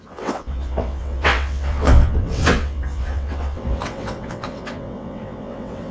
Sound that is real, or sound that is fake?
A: fake